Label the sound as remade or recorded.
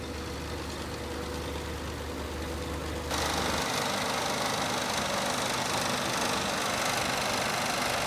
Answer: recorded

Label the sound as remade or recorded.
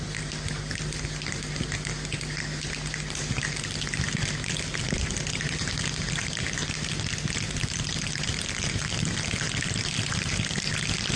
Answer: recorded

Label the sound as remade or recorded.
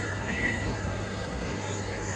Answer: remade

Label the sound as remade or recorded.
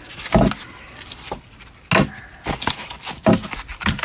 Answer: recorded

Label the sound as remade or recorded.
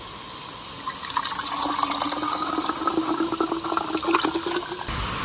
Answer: recorded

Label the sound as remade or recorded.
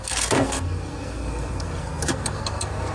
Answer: remade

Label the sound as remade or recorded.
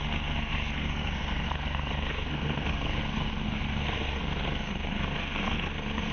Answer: remade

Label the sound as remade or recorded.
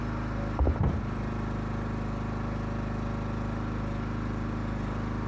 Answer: recorded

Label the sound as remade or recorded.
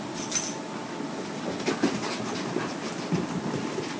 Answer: recorded